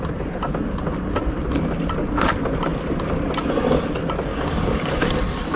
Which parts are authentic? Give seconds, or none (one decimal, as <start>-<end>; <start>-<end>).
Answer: 0.0-4.3; 5.0-5.6